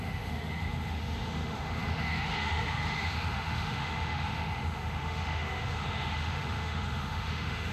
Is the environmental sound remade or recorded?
remade